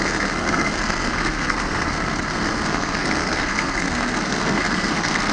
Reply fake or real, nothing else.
fake